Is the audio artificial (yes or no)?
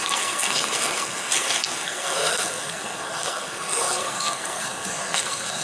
yes